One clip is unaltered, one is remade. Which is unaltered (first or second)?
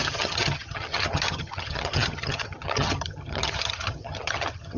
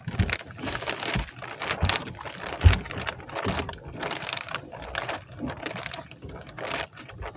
second